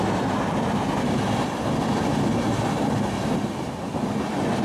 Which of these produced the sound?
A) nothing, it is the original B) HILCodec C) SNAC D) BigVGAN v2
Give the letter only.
A